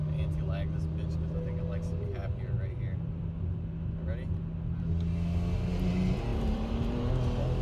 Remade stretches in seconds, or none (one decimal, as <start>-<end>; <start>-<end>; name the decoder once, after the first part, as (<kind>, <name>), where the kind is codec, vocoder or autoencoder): 6.3-7.1 (vocoder, BigVGAN v2)

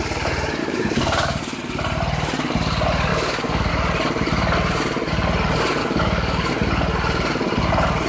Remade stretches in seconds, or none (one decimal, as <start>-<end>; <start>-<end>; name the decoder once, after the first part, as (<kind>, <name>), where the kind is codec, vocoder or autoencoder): 0.6-1.4 (codec, DAC); 3.1-3.7; 5.8-6.5

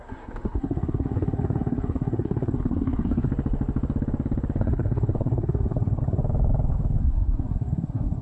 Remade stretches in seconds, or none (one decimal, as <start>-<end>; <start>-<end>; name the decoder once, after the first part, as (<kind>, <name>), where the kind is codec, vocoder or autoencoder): 0.0-3.3 (codec, SNAC); 4.6-6.2; 7.0-8.2

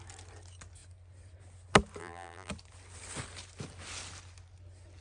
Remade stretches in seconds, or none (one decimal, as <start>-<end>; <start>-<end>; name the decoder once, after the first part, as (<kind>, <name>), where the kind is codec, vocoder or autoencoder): 2.0-2.5 (vocoder, BigVGAN v2)

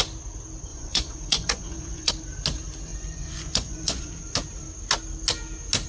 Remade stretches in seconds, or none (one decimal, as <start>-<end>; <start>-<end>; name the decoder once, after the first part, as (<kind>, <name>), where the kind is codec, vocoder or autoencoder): 0.7-2.1 (vocoder, Vocos); 2.9-4.1

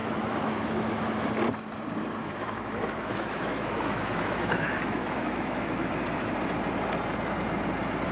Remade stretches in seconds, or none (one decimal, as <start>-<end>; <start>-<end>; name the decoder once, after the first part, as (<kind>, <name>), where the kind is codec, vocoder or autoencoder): 0.0-1.3 (autoencoder, DAC-VAE); 2.2-5.9

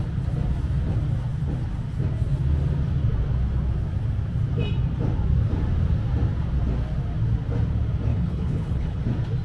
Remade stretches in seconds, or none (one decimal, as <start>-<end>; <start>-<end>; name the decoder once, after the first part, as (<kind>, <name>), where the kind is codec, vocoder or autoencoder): 8.1-9.0 (codec, HILCodec)

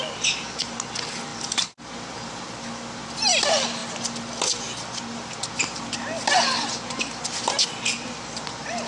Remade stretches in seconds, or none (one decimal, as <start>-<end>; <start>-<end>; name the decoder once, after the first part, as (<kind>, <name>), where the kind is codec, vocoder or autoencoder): none